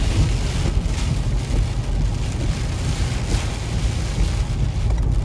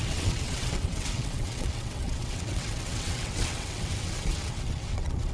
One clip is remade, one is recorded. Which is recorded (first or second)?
first